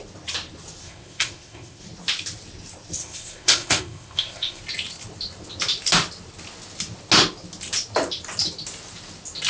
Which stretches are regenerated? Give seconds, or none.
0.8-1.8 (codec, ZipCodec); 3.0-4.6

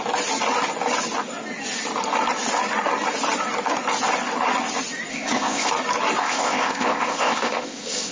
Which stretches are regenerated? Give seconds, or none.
5.1-5.7 (codec, ZipCodec); 6.2-8.1

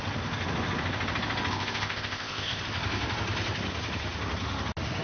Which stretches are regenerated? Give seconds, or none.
1.5-2.6 (codec, ZipCodec)

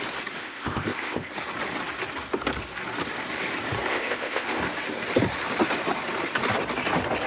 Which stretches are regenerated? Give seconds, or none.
0.4-1.3 (codec, ZipCodec); 3.9-4.6

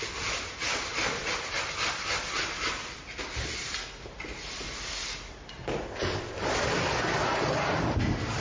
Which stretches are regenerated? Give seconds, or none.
5.9-6.4 (codec, ZipCodec)